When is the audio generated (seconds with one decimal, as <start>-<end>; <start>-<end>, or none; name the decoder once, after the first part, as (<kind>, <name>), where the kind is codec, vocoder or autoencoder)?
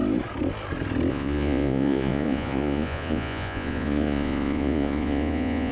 1.1-5.7 (vocoder, Vocos)